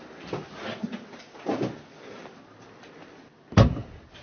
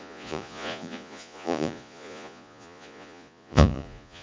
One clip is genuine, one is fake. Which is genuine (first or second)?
first